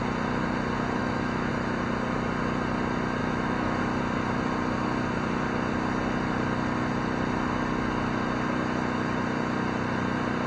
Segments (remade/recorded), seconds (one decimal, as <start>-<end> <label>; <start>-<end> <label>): 0.0-1.0 recorded; 1.0-1.5 remade; 1.5-3.2 recorded; 3.2-3.8 remade; 3.8-10.5 recorded